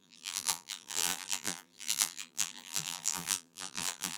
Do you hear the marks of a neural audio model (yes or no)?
yes